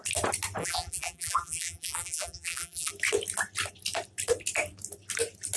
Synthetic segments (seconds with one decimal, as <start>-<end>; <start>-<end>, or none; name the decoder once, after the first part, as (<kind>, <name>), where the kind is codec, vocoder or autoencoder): 0.6-2.9 (vocoder, BigVGAN v2)